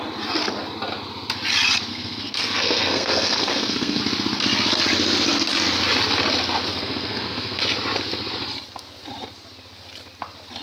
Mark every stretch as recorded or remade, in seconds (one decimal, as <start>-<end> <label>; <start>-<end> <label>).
0.0-1.9 recorded; 1.9-4.0 remade; 4.0-6.7 recorded; 6.7-7.6 remade; 7.6-10.6 recorded